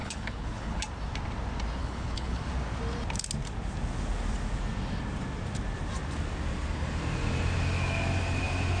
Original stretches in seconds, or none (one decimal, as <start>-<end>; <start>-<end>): 0.8-1.8; 2.4-8.8